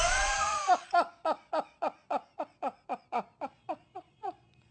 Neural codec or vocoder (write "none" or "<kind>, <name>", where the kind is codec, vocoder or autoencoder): vocoder, Vocos